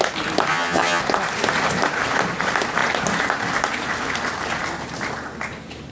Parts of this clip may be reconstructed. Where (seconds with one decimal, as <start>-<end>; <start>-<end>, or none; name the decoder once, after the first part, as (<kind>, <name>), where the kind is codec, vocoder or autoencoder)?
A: 0.5-1.0 (vocoder, HiFi-GAN)